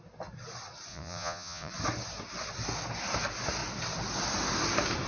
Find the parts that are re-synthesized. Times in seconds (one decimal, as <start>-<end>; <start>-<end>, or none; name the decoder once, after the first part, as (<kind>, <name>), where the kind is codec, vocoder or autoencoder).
0.9-1.7 (vocoder, Vocos)